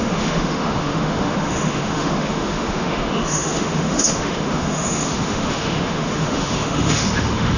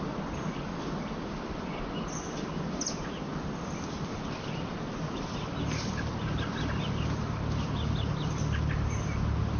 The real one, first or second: second